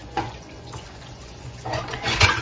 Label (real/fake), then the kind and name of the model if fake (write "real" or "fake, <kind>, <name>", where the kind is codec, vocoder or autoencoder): fake, vocoder, Vocos